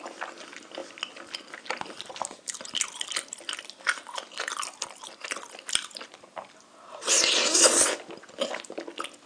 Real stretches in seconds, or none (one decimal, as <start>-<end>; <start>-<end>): 0.0-9.3

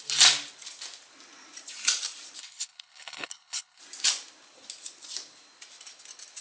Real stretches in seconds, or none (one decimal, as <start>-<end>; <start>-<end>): 0.0-2.4; 3.8-6.4

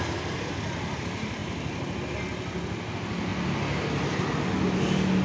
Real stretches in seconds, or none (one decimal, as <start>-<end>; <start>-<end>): 0.0-5.2